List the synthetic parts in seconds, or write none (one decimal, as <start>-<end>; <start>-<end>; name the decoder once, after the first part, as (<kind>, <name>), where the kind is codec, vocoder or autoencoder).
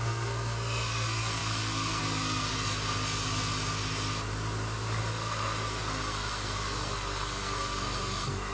0.0-2.5 (codec, SNAC); 5.0-8.5